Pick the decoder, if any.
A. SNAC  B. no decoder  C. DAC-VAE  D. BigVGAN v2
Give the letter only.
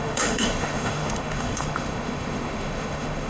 C